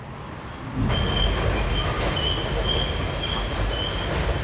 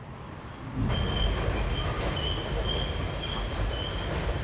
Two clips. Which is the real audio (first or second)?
first